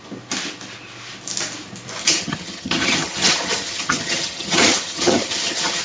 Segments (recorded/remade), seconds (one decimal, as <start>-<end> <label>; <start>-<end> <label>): 0.0-2.0 recorded; 2.0-5.8 remade